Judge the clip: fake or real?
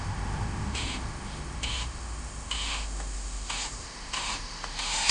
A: fake